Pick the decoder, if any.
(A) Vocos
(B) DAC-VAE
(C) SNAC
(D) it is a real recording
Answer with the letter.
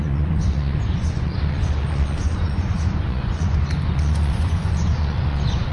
A